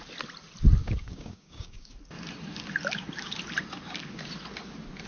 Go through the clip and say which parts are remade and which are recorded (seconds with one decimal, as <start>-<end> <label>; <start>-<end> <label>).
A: 0.0-0.8 recorded; 0.8-1.9 remade; 1.9-5.1 recorded